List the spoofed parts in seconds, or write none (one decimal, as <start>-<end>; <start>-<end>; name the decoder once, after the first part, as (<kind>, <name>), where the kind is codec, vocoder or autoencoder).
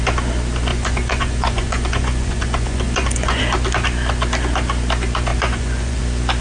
0.7-3.4 (vocoder, Vocos); 5.3-6.0